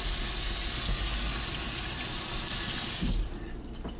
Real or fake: real